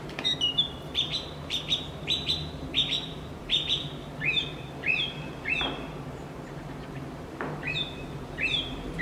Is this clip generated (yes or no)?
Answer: yes